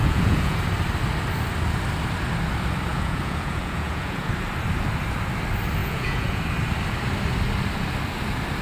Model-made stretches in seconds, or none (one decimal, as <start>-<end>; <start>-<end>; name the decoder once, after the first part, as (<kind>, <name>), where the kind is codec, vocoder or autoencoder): 0.0-0.6 (vocoder, Vocos); 2.9-4.3; 5.8-6.4